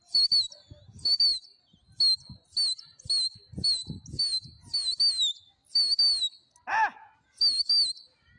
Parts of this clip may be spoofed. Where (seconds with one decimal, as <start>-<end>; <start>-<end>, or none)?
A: none